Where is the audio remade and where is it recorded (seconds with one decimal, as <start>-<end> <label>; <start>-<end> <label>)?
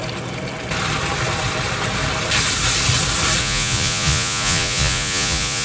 0.0-3.4 recorded; 3.4-5.6 remade